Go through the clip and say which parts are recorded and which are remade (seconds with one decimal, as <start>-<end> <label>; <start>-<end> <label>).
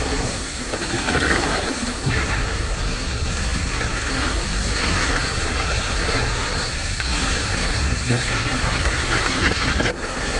0.0-10.4 remade